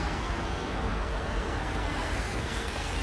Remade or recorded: remade